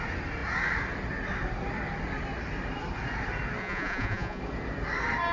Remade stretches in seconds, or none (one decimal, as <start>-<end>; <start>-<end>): 3.6-4.4